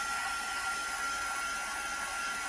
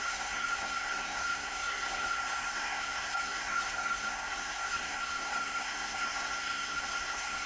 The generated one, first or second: second